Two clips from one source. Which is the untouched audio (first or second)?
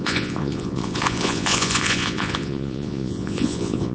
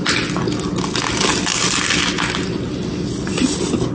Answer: second